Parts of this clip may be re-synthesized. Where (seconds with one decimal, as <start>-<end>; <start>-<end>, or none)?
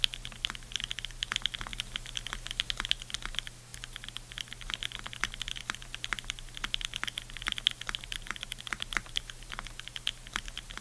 none